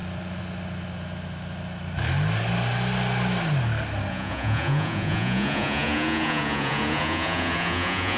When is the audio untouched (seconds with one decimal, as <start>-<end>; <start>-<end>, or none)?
0.0-4.1